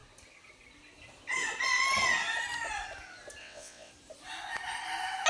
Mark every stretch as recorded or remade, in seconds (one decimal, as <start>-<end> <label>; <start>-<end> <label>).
0.0-3.4 recorded; 3.4-3.9 remade; 3.9-5.3 recorded